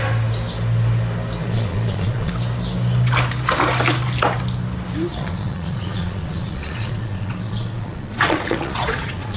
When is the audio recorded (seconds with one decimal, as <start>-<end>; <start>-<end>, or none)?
0.0-1.4; 2.3-5.1